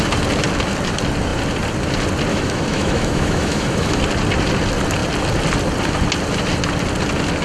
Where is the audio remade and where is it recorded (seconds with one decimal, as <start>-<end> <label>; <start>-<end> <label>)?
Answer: 0.0-2.3 recorded; 2.3-4.0 remade; 4.0-7.4 recorded